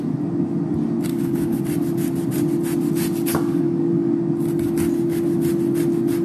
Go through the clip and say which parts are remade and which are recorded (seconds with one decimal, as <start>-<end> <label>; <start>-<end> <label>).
0.0-1.1 recorded; 1.1-1.6 remade; 1.6-3.3 recorded; 3.3-4.2 remade; 4.2-6.2 recorded